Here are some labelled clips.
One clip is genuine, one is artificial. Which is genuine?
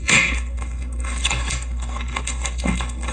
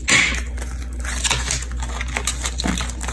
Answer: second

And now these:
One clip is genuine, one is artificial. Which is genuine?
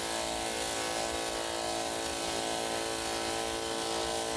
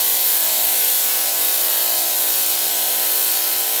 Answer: first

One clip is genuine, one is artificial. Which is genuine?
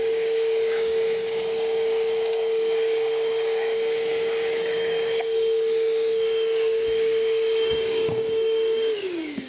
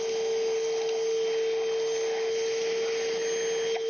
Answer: second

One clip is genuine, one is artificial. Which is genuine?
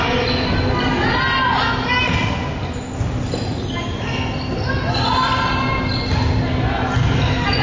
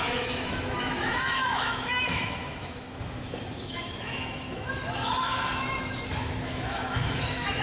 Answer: first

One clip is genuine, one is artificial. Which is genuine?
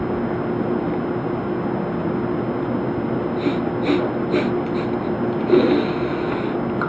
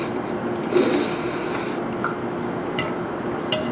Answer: first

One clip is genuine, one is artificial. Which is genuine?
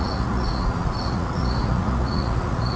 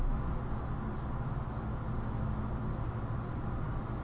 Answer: second